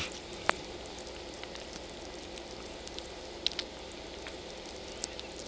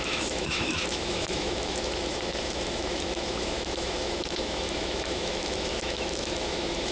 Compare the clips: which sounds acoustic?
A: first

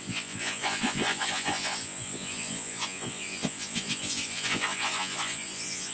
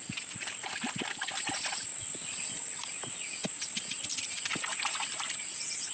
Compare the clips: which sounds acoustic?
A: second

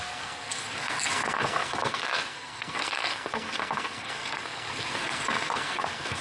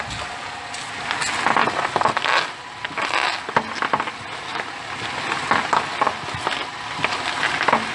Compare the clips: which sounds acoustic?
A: second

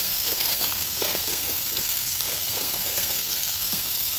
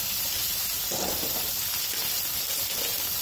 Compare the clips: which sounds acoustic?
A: second